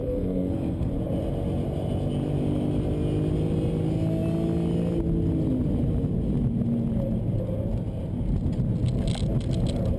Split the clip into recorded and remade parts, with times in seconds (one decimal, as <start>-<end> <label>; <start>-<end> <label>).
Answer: 0.0-0.9 remade; 0.9-10.0 recorded